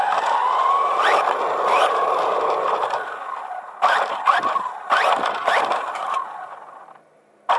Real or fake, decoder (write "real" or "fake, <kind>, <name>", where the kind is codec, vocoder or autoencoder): real